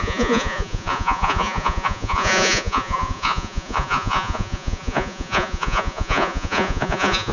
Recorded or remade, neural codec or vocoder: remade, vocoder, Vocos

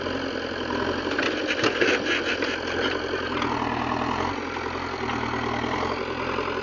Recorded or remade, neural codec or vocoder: recorded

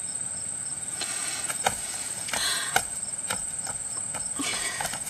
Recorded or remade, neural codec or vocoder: remade, vocoder, Vocos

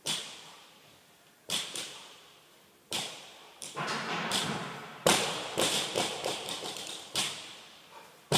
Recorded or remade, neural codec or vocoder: remade, vocoder, BigVGAN v2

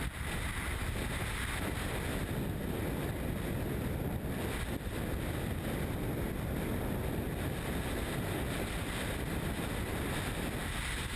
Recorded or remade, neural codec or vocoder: recorded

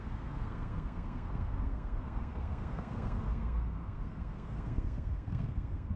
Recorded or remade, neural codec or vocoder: remade, codec, SNAC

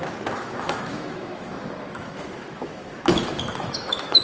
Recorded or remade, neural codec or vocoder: remade, autoencoder, DAC-VAE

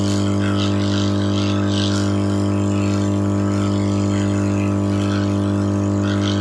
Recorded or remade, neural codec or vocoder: recorded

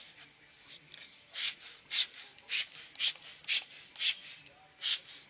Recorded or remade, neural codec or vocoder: recorded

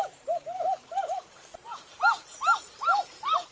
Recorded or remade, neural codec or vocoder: remade, vocoder, BigVGAN v2